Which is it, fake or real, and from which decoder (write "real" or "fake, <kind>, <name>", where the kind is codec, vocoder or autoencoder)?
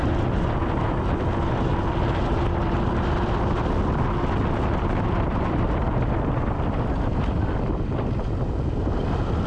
real